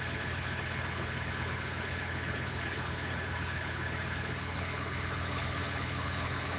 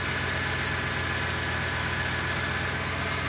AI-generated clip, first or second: first